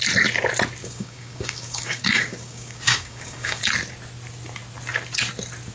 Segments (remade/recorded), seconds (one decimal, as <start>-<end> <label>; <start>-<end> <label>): 0.0-0.8 recorded; 0.8-3.6 remade; 3.6-5.7 recorded